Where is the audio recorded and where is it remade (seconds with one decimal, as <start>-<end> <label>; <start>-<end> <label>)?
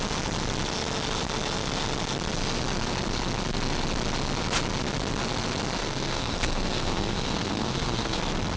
0.0-5.8 recorded; 5.8-8.2 remade; 8.2-8.6 recorded